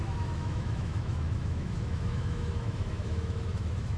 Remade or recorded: remade